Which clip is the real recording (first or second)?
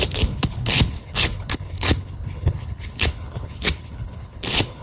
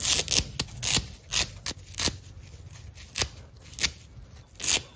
second